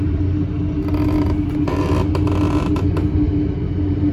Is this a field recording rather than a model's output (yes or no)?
yes